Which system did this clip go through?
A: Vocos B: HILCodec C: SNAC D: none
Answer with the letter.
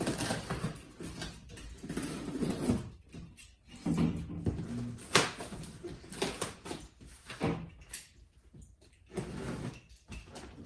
D